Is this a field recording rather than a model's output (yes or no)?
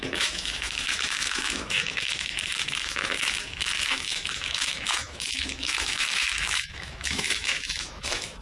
no